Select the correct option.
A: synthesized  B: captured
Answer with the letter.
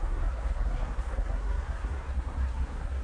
A